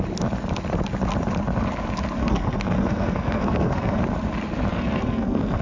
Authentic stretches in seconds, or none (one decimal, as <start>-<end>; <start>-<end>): 0.0-2.2; 4.0-4.7